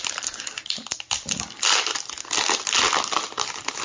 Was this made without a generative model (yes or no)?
yes